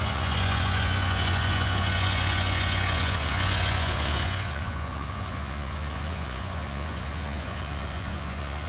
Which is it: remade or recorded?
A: remade